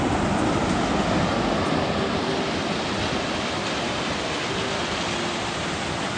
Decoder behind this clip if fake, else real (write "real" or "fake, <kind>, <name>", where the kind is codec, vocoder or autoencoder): real